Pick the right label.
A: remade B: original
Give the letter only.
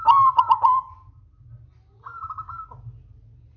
B